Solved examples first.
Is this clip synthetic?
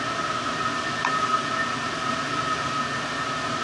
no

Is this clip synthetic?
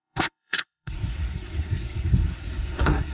yes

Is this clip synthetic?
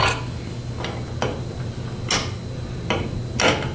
no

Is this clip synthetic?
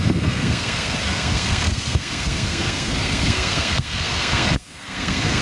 yes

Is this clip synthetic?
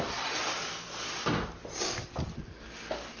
no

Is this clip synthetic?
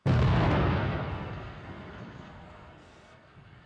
yes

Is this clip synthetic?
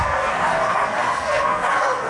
yes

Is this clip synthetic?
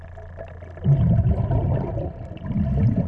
no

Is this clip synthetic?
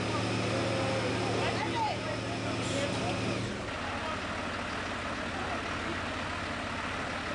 no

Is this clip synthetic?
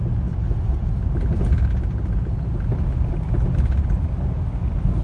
no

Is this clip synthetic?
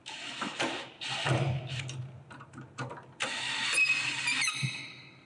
no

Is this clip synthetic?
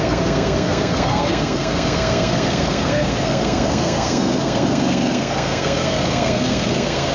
yes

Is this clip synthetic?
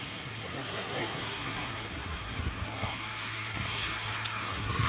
yes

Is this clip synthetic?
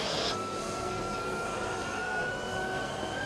yes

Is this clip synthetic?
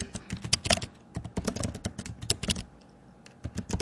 no